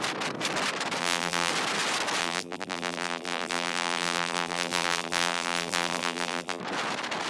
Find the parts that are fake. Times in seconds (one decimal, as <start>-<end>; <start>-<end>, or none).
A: 1.0-1.5; 2.2-6.6